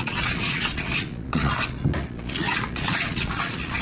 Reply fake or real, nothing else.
fake